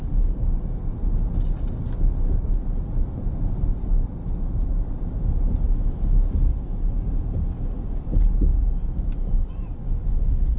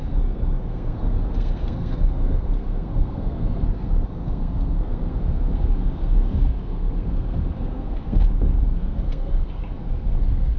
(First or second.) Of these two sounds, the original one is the first